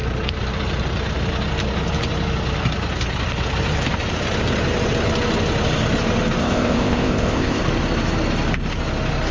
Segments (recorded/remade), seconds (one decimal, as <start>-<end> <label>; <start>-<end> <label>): 0.0-6.4 recorded; 6.4-7.6 remade; 7.6-9.3 recorded